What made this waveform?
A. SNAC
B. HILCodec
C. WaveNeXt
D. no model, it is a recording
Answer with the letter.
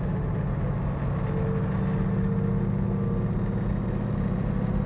D